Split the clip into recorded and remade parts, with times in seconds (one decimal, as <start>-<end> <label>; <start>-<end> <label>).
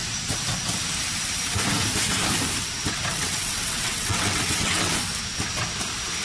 0.0-3.1 recorded; 3.1-4.9 remade; 4.9-6.2 recorded